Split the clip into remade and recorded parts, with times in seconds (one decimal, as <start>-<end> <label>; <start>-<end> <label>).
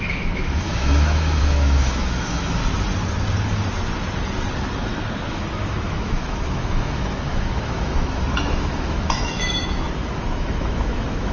0.0-2.6 remade; 2.6-5.3 recorded; 5.3-11.3 remade